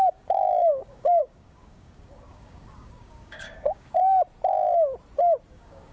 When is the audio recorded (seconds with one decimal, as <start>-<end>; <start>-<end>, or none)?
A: 4.0-5.5